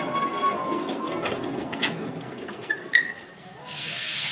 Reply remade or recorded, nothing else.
remade